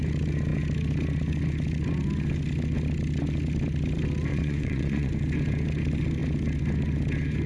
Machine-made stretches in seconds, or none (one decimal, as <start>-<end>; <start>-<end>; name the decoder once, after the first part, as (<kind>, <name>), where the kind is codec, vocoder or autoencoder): 4.3-5.1 (vocoder, Vocos)